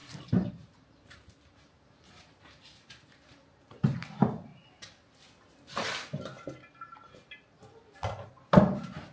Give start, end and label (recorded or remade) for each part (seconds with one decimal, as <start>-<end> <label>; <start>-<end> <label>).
0.0-4.5 remade; 4.5-8.3 recorded; 8.3-9.1 remade